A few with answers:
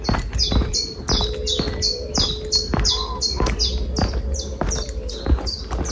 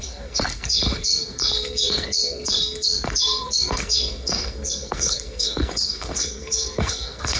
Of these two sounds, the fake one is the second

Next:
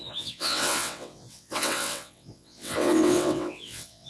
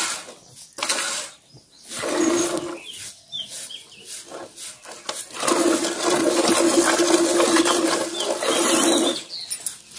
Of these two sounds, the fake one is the first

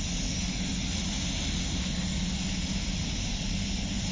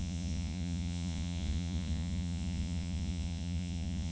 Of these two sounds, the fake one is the second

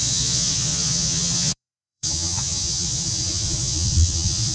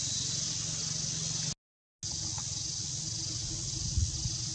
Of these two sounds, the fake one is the first